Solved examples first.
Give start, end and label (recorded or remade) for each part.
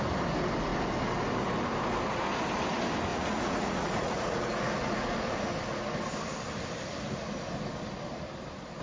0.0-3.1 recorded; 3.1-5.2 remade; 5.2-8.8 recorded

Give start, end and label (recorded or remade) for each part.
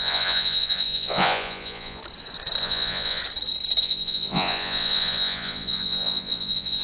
0.0-2.0 remade; 2.0-2.6 recorded; 2.6-3.2 remade; 3.2-3.8 recorded; 3.8-6.8 remade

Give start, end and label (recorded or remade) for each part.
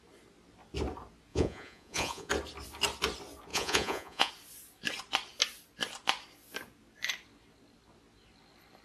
0.0-1.3 recorded; 1.3-2.3 remade; 2.3-3.5 recorded; 3.5-4.3 remade; 4.3-8.8 recorded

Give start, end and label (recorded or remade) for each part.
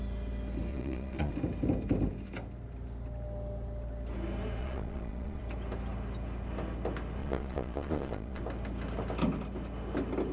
0.0-0.7 recorded; 0.7-1.3 remade; 1.3-4.6 recorded; 4.6-5.4 remade; 5.4-7.2 recorded; 7.2-8.4 remade; 8.4-10.3 recorded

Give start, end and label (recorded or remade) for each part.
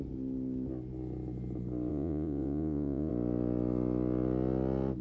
0.0-1.9 recorded; 1.9-3.1 remade; 3.1-5.0 recorded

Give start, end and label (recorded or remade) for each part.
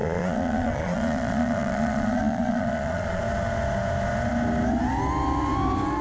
0.0-3.2 remade; 3.2-6.0 recorded